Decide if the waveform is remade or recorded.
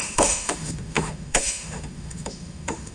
remade